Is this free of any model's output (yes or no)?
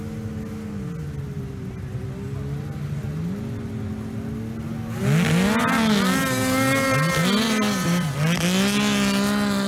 yes